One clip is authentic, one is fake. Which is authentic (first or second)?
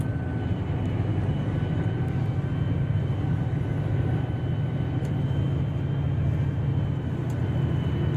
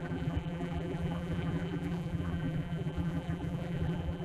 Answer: first